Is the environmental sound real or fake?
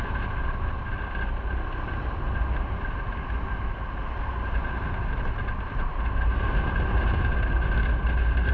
real